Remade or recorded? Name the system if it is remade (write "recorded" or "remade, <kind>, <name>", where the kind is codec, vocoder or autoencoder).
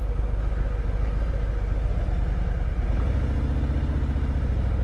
recorded